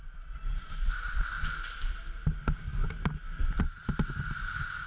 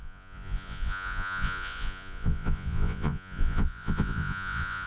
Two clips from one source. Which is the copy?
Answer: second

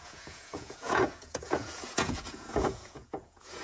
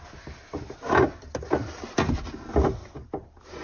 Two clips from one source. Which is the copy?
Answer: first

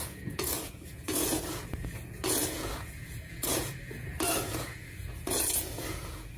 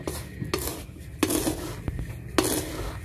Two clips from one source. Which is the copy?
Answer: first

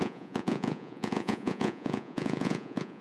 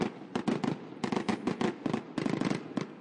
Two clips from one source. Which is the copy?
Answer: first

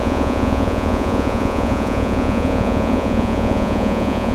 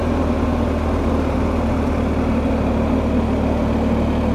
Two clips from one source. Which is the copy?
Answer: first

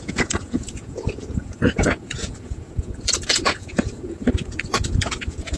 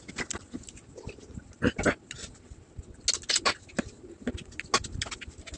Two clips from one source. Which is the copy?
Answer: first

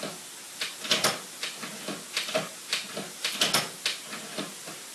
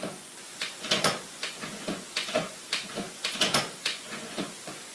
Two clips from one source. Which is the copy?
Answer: second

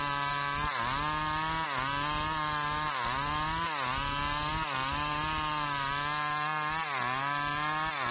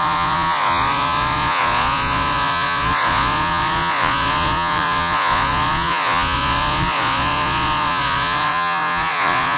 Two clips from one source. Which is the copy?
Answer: second